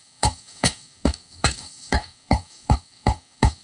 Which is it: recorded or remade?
remade